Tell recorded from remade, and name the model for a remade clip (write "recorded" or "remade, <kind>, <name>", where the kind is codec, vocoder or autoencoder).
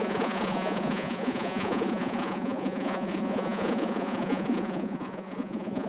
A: remade, vocoder, Vocos